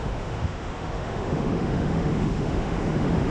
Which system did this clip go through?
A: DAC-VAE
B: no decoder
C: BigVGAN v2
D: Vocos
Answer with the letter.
A